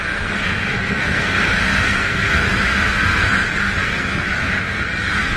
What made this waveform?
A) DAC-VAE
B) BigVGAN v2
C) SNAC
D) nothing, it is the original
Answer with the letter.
C